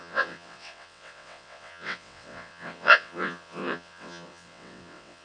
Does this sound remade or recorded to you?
remade